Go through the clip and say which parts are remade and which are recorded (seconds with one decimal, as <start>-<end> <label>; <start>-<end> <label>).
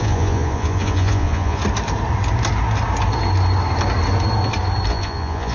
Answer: 0.0-1.6 remade; 1.6-4.9 recorded; 4.9-5.5 remade